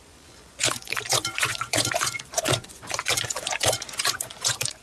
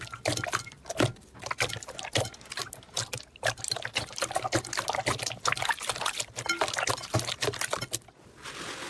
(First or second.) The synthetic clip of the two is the first